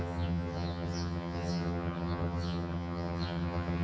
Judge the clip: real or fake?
fake